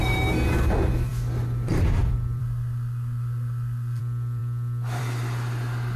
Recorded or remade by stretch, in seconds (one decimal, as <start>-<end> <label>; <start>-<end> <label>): 0.0-2.4 recorded; 2.4-4.0 remade; 4.0-6.0 recorded